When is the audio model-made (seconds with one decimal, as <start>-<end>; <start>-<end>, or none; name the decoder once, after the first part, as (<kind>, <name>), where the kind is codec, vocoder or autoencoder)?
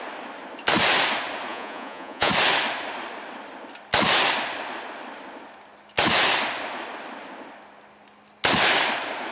1.5-2.3 (vocoder, Vocos)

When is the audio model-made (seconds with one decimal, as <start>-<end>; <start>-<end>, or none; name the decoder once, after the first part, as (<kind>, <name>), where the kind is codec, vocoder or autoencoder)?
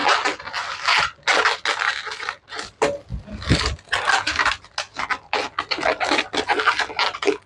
none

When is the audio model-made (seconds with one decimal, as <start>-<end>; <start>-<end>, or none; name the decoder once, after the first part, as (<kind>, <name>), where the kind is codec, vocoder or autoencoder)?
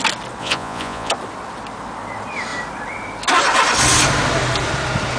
0.4-1.1 (vocoder, Vocos)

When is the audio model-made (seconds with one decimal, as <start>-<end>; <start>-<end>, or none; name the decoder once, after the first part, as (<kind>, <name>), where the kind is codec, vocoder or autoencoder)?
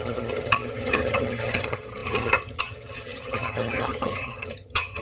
0.0-5.0 (vocoder, HiFi-GAN)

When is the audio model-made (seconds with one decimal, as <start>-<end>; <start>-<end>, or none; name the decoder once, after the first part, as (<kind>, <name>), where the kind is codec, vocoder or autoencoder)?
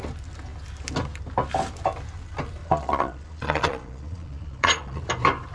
2.6-5.0 (vocoder, Vocos)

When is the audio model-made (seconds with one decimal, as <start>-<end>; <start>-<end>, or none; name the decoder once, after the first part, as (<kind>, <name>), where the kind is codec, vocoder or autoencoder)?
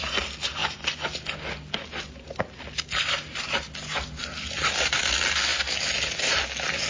none